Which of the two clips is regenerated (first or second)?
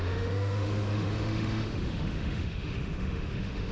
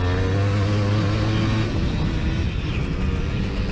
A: first